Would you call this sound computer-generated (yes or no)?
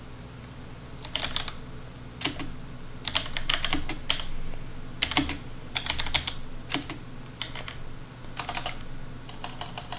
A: no